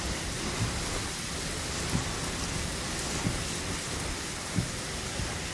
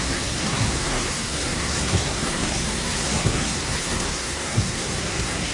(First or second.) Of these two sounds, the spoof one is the second